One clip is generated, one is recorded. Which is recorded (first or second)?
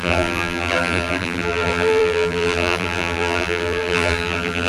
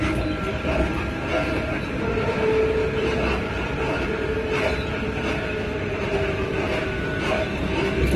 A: second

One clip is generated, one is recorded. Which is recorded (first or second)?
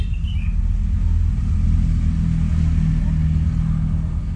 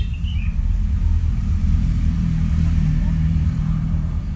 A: first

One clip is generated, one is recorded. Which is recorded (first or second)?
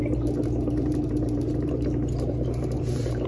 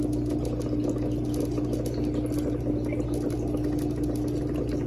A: second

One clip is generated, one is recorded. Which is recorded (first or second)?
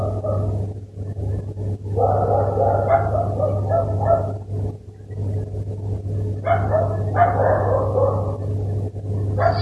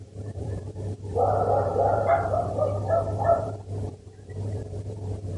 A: first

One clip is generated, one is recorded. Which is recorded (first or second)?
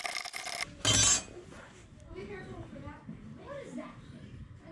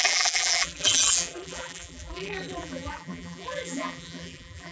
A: first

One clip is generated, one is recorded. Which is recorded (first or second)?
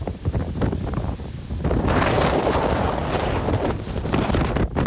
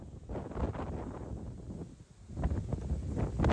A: second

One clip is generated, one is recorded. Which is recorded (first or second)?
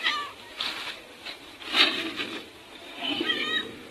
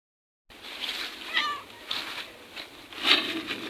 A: second